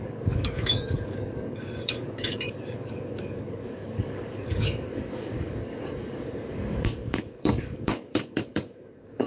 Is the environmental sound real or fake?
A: fake